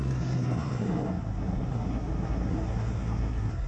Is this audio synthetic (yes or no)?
yes